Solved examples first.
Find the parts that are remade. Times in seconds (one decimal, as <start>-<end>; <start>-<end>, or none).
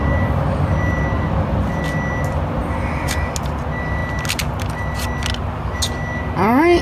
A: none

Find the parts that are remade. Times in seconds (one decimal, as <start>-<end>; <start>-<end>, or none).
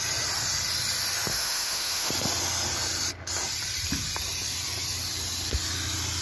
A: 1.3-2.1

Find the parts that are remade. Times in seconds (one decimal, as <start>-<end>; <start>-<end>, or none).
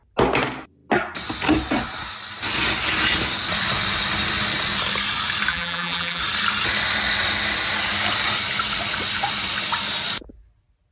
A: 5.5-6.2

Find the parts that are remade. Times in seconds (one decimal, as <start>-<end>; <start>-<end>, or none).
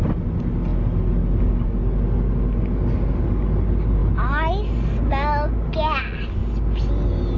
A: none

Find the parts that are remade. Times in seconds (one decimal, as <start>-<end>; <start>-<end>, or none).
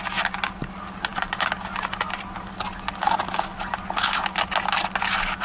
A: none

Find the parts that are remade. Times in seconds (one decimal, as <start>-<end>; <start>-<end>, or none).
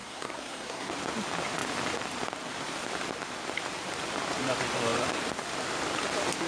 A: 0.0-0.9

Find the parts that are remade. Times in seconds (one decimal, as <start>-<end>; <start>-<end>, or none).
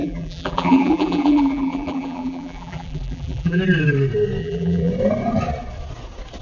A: 0.0-3.6; 4.4-4.9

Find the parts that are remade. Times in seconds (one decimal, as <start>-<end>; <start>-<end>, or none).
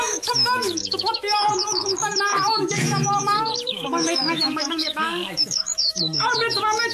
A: 0.0-6.9